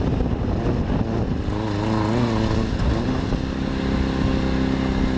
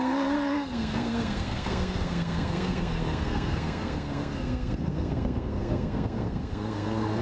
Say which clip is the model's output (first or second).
second